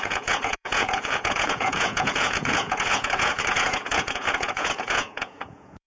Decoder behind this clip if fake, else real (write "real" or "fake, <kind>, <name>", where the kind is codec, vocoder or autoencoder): fake, vocoder, Vocos